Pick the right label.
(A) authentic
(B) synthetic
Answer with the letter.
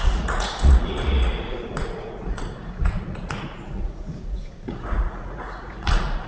B